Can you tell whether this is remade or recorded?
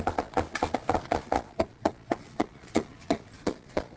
remade